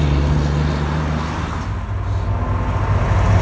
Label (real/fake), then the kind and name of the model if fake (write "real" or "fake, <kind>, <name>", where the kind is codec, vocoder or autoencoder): real